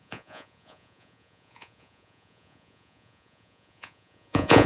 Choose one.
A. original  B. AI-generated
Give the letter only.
B